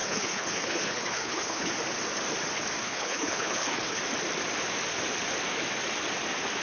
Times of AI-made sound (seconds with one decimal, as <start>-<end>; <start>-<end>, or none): 0.0-1.7; 2.8-4.0

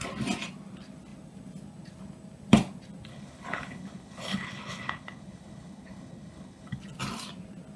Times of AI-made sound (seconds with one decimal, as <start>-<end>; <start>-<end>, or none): 3.1-6.8

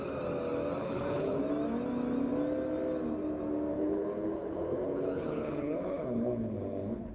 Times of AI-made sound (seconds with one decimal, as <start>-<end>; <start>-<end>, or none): 0.8-1.4; 3.7-7.1